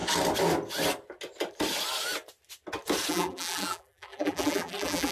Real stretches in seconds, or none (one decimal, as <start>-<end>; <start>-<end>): 0.0-3.1